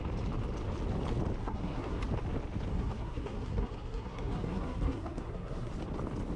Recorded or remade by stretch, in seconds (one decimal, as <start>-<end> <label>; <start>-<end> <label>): 0.0-1.4 recorded; 1.4-2.0 remade; 2.0-2.7 recorded; 2.7-5.7 remade; 5.7-6.4 recorded